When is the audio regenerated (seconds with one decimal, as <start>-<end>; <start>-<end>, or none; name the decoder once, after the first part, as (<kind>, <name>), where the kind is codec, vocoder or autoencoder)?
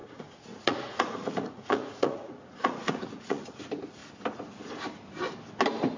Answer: 0.0-3.6 (vocoder, Vocos)